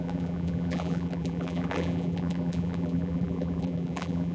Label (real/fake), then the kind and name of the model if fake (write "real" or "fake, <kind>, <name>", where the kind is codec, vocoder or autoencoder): fake, vocoder, BigVGAN v2